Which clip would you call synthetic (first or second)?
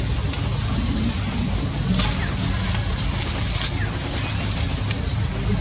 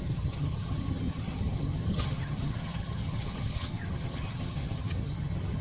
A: second